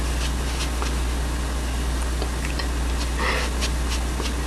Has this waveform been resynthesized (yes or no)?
no